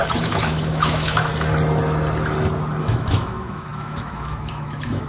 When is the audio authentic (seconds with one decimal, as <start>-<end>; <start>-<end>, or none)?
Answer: 1.3-2.8